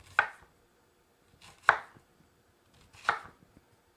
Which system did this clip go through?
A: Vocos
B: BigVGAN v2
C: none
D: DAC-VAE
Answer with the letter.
C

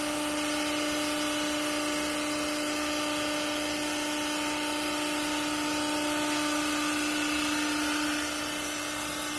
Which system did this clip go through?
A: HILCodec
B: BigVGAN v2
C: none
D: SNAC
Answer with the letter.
C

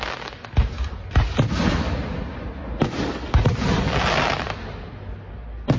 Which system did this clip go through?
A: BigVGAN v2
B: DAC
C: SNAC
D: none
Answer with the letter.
D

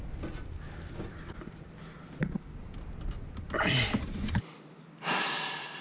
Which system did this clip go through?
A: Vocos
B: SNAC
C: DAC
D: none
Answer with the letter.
D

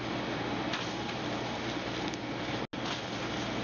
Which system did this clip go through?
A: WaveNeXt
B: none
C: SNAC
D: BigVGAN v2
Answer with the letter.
B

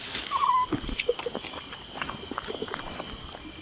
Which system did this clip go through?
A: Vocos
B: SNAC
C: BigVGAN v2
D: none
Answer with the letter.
D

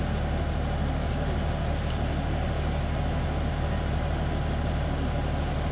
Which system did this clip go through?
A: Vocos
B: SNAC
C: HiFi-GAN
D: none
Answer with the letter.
D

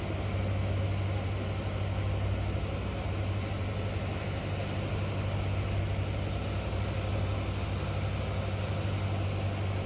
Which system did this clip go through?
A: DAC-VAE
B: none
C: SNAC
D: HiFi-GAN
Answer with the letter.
B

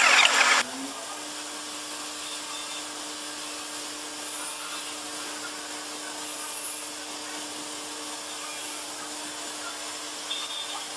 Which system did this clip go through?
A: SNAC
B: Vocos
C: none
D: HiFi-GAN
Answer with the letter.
C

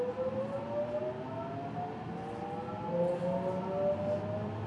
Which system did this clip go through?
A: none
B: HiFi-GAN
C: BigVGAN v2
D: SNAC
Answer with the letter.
A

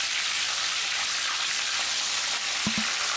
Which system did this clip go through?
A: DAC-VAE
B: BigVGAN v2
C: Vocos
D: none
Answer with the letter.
D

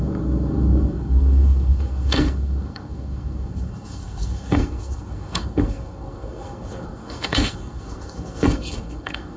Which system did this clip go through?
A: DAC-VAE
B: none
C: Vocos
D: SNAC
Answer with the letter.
D